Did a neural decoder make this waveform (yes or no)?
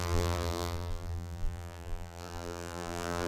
yes